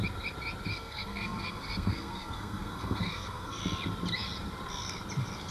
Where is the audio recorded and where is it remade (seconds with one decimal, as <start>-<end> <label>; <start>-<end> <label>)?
0.0-0.7 recorded; 0.7-3.6 remade; 3.6-5.5 recorded